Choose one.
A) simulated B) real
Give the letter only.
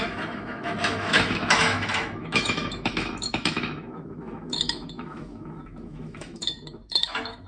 A